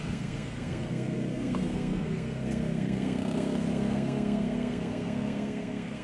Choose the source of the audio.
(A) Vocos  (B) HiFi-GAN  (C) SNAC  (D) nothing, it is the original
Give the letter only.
C